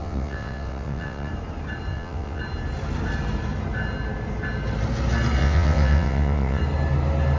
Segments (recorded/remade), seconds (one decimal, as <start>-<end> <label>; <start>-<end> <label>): 0.0-1.3 remade; 1.3-1.9 recorded; 1.9-2.4 remade; 2.4-5.4 recorded; 5.4-6.6 remade; 6.6-7.4 recorded